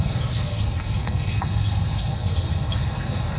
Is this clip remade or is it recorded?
remade